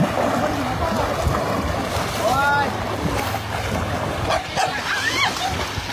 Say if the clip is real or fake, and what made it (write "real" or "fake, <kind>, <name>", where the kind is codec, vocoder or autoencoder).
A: real